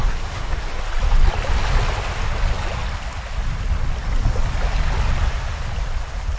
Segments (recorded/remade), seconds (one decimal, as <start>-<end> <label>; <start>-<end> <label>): 0.0-0.8 remade; 0.8-6.4 recorded